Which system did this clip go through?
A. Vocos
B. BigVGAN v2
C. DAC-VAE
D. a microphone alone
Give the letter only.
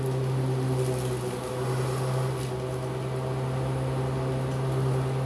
D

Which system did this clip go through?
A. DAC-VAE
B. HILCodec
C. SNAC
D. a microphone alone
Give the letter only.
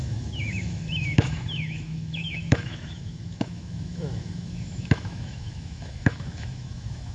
A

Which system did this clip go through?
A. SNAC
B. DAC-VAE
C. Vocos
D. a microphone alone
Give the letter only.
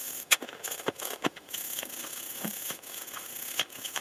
B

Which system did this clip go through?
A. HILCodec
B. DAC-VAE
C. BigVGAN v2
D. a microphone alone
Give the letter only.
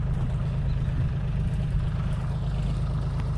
D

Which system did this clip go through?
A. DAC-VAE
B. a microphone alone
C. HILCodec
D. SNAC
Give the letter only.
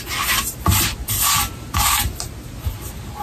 B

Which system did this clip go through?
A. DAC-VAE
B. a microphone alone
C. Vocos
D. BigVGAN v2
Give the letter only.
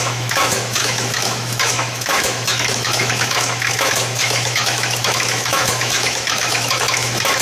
A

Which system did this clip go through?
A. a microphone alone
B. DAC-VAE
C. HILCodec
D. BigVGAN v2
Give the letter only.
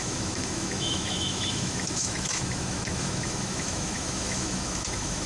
B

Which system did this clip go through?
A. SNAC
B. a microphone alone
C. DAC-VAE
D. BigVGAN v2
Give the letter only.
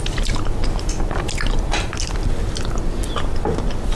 B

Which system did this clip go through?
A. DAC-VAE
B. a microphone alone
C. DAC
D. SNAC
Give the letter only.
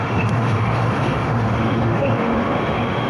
A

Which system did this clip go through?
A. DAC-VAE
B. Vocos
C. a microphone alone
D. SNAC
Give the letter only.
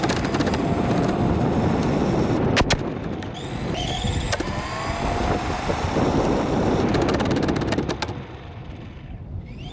C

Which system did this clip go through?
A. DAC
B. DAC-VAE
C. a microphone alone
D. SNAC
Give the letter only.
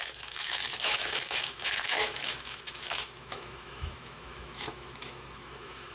B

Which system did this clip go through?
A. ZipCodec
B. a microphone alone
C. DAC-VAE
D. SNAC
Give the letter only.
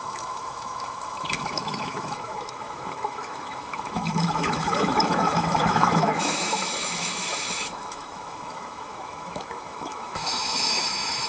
C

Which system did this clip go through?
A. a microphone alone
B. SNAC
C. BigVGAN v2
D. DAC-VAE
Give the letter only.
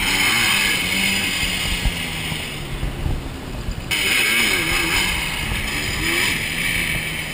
A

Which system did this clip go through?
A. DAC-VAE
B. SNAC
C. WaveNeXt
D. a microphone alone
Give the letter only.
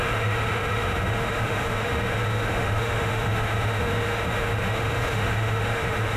A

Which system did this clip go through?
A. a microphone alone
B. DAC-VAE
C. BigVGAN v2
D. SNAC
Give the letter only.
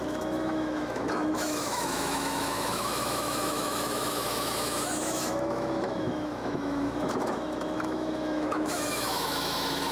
B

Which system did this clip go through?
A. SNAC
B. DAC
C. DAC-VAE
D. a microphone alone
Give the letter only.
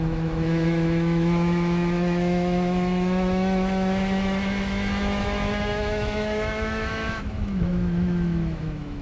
C